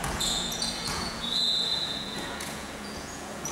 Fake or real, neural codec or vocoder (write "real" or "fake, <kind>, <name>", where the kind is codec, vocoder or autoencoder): fake, vocoder, Vocos